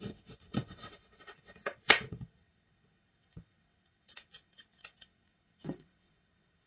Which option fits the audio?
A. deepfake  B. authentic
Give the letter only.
A